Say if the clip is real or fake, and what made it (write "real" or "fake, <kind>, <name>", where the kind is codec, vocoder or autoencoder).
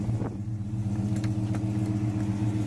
real